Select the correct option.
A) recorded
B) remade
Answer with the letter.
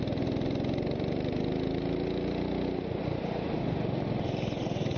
A